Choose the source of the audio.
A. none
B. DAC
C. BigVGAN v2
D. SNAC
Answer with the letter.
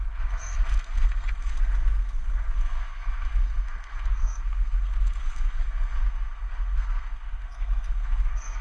D